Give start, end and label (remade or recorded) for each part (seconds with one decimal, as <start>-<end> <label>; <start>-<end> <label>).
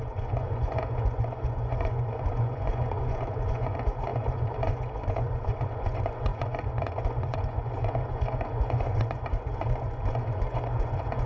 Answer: 0.0-11.3 remade